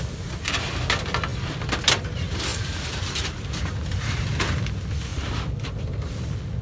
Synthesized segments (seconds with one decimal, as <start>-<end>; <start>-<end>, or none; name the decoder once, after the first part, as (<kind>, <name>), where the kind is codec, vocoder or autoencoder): 2.5-3.6 (vocoder, BigVGAN v2)